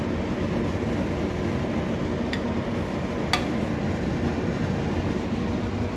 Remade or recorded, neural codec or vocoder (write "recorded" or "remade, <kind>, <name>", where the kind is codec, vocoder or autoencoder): recorded